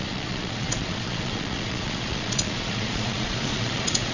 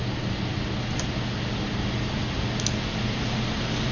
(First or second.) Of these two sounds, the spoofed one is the first